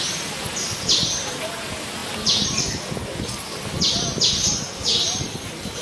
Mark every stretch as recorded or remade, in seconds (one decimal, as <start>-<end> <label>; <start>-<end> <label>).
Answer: 0.0-5.8 recorded